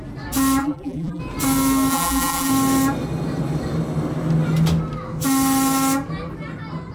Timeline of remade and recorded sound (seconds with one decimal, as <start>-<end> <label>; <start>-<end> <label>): 0.0-0.6 recorded; 0.6-1.2 remade; 1.2-1.9 recorded; 1.9-2.5 remade; 2.5-6.9 recorded